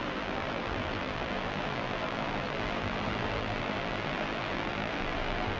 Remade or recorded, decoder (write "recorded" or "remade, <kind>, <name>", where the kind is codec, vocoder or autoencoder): remade, vocoder, BigVGAN v2